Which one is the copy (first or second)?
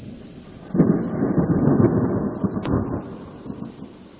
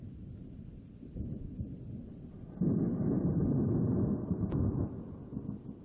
first